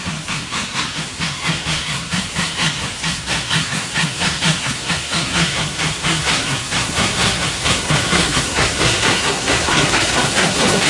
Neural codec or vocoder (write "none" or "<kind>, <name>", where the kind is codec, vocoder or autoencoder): codec, SNAC